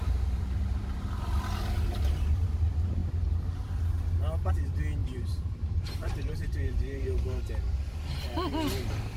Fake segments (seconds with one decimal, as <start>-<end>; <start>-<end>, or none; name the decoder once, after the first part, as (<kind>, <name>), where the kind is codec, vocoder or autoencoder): 5.0-7.5 (vocoder, BigVGAN v2)

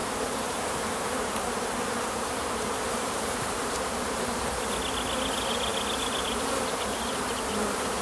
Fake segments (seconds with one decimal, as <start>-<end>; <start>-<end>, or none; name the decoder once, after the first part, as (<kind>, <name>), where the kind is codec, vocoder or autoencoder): 0.0-4.3 (vocoder, BigVGAN v2)

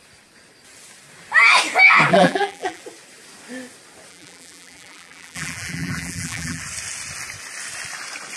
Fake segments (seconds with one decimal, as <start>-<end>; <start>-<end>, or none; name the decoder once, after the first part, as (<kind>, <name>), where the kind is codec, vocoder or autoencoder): 2.1-2.8 (vocoder, BigVGAN v2); 4.1-6.6